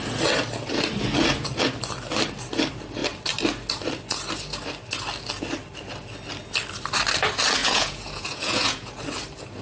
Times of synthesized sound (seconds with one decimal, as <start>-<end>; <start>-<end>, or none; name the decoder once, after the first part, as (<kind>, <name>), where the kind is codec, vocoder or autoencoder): 7.6-8.9 (vocoder, Vocos)